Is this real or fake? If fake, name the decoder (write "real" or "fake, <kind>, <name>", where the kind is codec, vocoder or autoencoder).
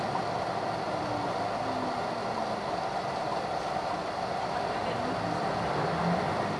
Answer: real